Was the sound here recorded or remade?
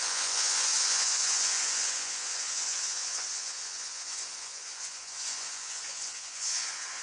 remade